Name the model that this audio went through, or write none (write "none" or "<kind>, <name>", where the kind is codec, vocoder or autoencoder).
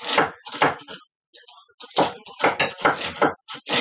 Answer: none